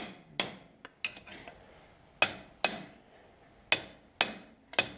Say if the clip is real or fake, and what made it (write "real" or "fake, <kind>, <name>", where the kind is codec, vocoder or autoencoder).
real